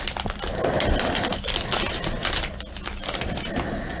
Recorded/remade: recorded